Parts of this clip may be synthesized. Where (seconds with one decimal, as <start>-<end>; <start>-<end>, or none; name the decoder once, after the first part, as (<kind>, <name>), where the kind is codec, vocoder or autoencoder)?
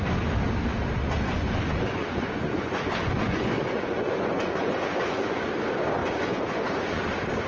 1.0-5.5 (vocoder, Vocos); 6.0-7.1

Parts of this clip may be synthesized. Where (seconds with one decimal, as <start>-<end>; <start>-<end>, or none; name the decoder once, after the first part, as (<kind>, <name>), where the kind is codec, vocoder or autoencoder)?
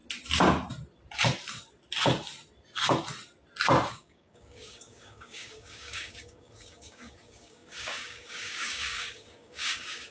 3.9-10.1 (codec, DAC)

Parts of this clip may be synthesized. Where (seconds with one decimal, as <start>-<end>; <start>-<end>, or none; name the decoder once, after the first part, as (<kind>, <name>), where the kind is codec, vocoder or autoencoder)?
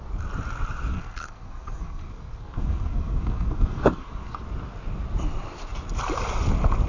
0.9-4.4 (codec, SNAC)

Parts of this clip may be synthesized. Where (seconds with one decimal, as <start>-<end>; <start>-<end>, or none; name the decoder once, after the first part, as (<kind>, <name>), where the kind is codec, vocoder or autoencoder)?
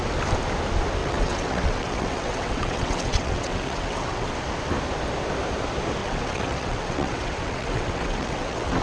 1.0-4.3 (vocoder, WaveNeXt); 6.0-8.8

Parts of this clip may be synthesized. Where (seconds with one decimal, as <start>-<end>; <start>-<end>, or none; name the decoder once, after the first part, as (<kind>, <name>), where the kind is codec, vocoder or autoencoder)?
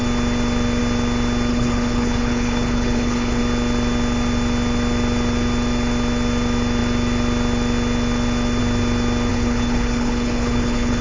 1.5-3.4 (codec, HILCodec); 9.3-11.0